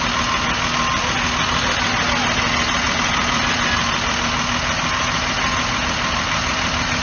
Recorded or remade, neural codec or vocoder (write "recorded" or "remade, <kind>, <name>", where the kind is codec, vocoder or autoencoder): recorded